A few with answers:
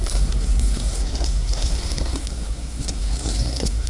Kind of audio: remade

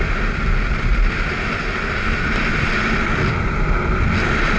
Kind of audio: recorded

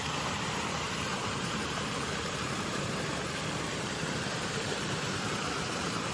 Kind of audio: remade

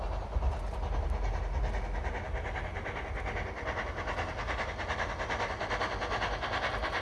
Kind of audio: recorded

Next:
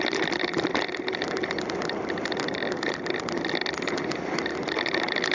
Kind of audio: recorded